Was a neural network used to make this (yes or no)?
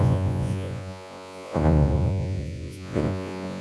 yes